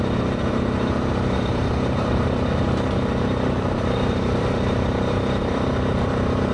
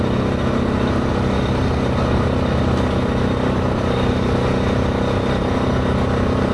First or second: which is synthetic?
first